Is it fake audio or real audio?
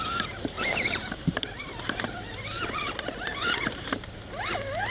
fake